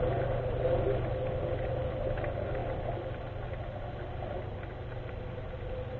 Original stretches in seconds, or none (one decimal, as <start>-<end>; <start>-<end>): 0.0-6.0